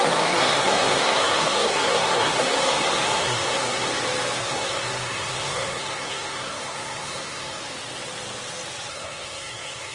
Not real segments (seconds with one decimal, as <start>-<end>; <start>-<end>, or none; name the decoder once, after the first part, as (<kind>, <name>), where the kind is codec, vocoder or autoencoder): 0.0-3.9 (codec, SNAC); 4.4-7.6; 8.9-9.9